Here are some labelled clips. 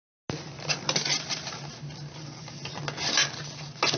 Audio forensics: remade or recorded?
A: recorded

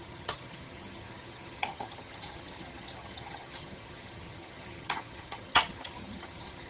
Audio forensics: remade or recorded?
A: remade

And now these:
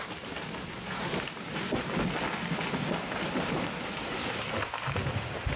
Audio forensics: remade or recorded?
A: recorded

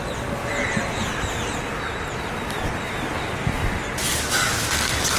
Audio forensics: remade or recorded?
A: recorded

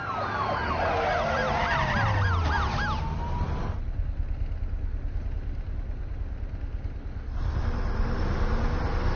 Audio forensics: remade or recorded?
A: recorded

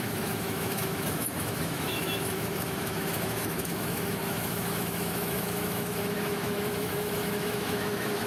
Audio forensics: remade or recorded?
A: remade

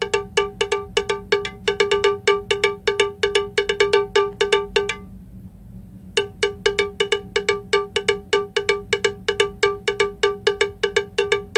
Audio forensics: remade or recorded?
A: recorded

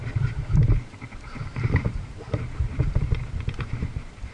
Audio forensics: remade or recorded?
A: remade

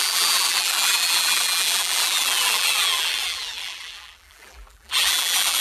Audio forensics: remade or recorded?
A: remade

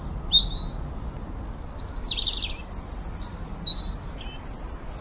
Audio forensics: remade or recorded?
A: recorded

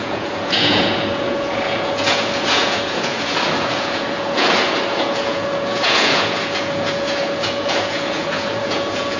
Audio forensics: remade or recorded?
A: remade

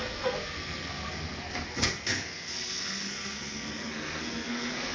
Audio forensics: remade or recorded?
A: remade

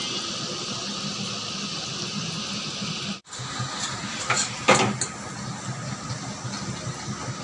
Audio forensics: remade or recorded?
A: recorded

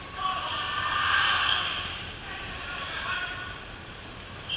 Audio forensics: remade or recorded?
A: remade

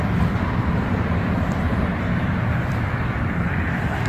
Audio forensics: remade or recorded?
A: recorded